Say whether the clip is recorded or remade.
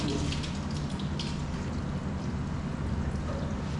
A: recorded